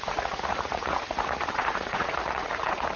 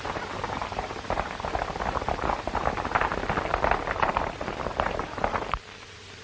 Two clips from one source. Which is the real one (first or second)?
second